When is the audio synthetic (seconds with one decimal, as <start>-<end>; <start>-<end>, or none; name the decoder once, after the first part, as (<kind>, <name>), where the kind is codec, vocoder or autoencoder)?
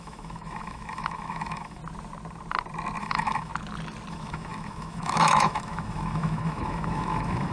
0.0-1.8 (autoencoder, DAC-VAE); 3.0-3.5; 4.1-7.5